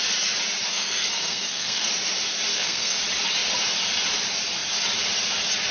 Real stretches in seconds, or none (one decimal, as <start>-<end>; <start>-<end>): 0.0-0.7; 1.9-2.5; 3.0-5.7